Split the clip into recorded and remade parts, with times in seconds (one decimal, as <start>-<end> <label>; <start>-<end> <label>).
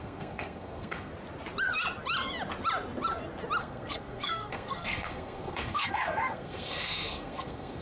0.0-1.1 remade; 1.1-3.6 recorded; 3.6-7.8 remade